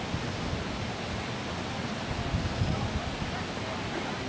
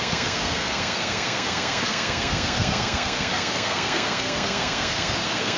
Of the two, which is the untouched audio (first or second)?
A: first